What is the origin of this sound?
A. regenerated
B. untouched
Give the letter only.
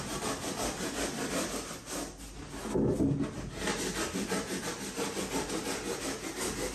B